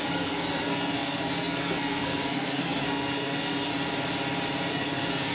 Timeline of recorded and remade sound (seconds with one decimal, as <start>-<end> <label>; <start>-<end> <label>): 0.0-3.7 remade; 3.7-4.7 recorded; 4.7-5.3 remade